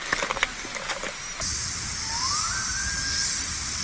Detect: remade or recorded recorded